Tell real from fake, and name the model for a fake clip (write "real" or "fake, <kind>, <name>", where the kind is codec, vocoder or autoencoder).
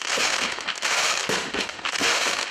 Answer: fake, autoencoder, DAC-VAE